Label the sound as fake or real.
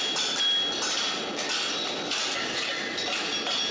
real